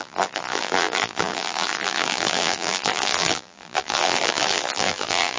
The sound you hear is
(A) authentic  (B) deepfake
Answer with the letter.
B